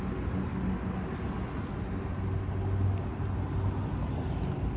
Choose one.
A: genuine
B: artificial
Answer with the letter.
A